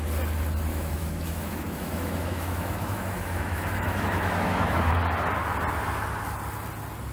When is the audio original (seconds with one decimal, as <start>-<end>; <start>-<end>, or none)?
0.0-0.7; 5.0-7.1